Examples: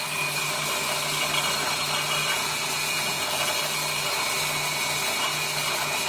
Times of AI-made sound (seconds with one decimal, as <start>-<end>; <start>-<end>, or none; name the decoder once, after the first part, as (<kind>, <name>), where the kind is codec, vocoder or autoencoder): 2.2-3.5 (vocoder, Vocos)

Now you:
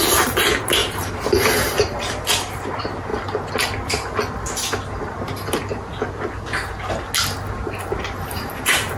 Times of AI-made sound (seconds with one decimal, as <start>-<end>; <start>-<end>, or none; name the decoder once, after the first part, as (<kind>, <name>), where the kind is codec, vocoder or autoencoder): 0.0-3.1 (vocoder, BigVGAN v2); 7.8-9.0

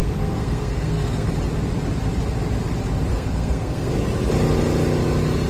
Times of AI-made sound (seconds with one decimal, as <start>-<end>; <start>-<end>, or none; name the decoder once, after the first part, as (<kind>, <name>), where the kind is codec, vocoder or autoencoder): 0.0-1.3 (codec, SNAC); 3.1-3.9

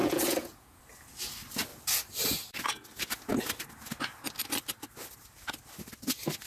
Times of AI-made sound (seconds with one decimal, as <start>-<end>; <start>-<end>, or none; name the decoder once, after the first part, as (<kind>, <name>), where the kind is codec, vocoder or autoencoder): 0.0-0.8 (vocoder, Vocos)

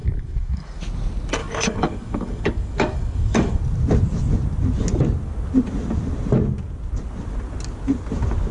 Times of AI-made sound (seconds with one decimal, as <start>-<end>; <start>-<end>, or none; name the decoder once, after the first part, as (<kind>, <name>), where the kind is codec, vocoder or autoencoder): 0.0-0.8 (codec, DAC); 1.4-3.6

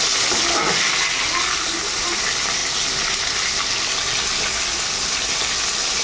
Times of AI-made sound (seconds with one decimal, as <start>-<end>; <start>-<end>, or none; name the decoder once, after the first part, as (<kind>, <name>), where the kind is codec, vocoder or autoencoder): none

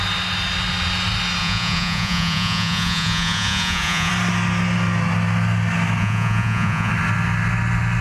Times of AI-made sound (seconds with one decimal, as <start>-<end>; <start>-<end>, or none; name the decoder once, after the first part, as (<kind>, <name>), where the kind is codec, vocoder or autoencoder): 1.4-4.1 (vocoder, Vocos); 6.0-6.9